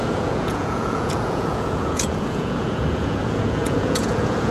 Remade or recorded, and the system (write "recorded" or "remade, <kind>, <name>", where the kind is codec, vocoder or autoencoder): remade, vocoder, Vocos